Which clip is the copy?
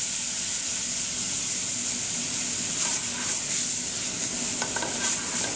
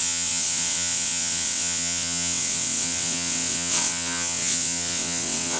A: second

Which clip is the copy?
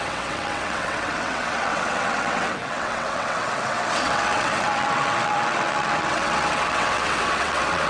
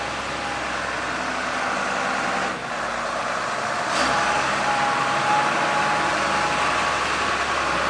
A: first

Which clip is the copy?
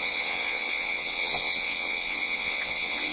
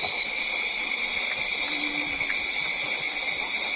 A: first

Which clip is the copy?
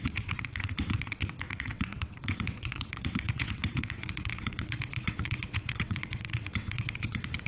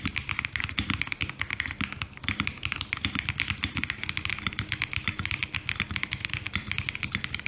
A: first